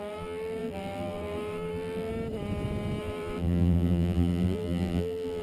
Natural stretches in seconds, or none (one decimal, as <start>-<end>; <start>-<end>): 2.1-3.0